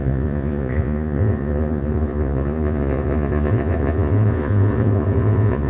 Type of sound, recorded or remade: remade